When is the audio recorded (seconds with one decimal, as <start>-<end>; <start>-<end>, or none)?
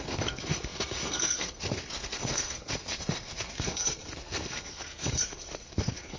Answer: none